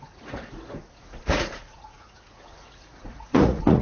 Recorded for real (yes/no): no